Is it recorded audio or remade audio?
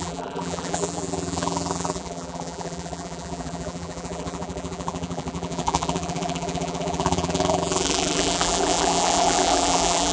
remade